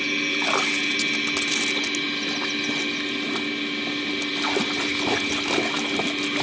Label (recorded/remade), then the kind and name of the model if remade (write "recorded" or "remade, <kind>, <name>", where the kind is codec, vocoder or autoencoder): recorded